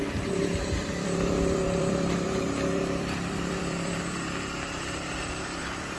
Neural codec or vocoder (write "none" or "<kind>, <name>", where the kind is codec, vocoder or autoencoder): vocoder, BigVGAN v2